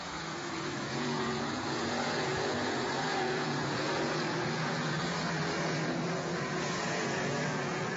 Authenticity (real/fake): fake